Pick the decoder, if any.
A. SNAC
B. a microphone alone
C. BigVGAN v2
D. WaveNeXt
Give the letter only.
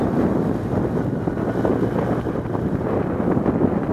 B